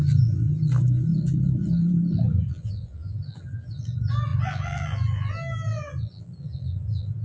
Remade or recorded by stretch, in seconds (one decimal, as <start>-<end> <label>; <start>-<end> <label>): 0.0-7.2 remade